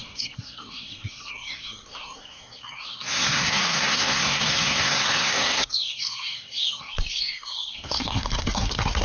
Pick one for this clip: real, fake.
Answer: fake